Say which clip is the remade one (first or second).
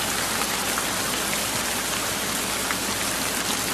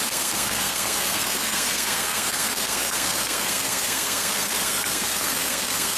second